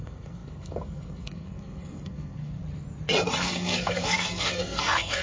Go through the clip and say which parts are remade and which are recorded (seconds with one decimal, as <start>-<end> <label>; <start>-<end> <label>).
0.0-2.6 remade; 2.6-3.4 recorded; 3.4-5.2 remade